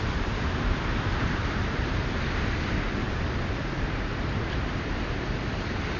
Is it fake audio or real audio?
fake